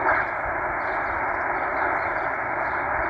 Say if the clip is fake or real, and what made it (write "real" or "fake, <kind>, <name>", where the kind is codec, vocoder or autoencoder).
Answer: real